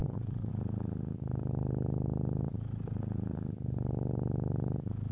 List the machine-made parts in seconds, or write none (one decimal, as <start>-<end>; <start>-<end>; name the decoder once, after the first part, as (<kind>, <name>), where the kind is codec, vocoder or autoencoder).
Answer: 0.0-0.5 (vocoder, WaveNeXt)